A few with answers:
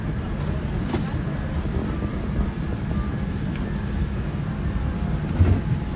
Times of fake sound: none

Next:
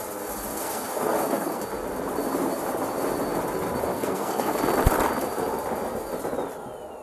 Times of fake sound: 0.5-1.6 (codec, SNAC); 3.9-4.6

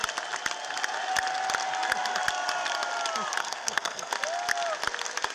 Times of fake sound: 3.4-4.1 (codec, SNAC)

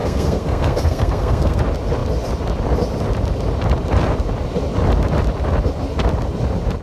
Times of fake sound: 0.0-1.6 (codec, SNAC)

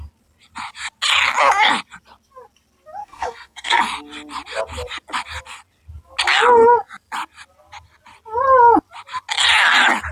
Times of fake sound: 3.0-3.8 (codec, SNAC)

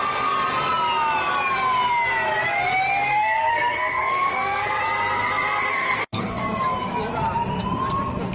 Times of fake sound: 3.1-4.8 (codec, SNAC); 5.7-6.4